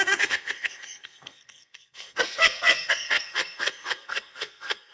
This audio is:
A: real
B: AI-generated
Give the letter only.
B